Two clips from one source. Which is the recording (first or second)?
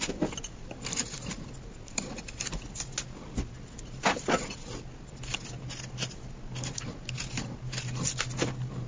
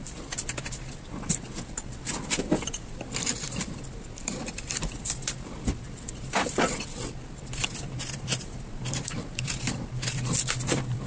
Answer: first